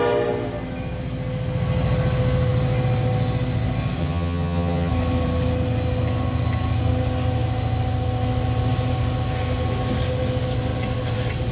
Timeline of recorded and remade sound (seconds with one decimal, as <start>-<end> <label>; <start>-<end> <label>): 0.0-4.0 recorded; 4.0-4.9 remade; 4.9-11.5 recorded